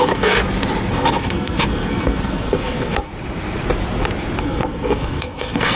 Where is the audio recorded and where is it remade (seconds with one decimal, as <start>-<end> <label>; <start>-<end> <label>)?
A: 0.0-0.4 remade; 0.4-0.9 recorded; 0.9-3.1 remade; 3.1-4.4 recorded; 4.4-5.8 remade